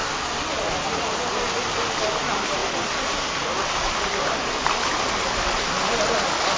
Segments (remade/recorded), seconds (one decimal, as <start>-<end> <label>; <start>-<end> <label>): 0.0-6.6 recorded